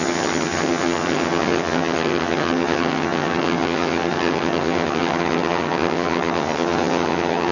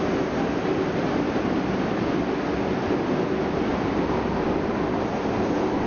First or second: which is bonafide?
second